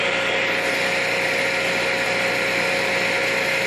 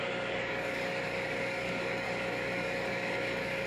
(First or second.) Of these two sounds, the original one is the first